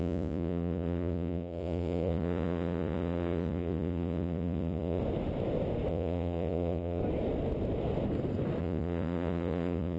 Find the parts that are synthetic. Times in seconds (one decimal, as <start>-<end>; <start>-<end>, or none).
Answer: 0.0-5.0; 5.9-7.0; 8.6-10.0